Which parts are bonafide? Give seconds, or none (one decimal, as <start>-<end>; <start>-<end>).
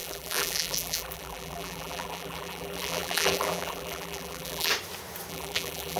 4.7-5.3